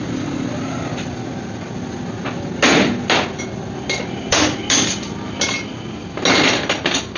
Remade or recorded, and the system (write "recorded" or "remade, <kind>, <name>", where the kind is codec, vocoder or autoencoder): recorded